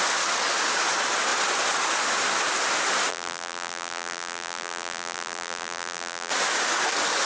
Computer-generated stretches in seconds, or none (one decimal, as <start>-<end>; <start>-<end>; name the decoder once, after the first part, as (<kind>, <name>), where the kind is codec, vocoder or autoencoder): 3.1-6.3 (vocoder, BigVGAN v2)